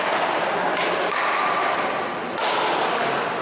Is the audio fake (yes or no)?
no